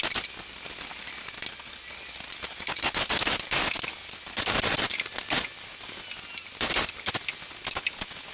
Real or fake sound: real